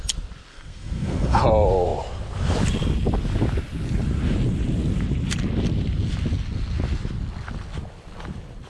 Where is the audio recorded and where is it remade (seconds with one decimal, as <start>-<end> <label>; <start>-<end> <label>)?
0.0-0.5 recorded; 0.5-1.4 remade; 1.4-8.7 recorded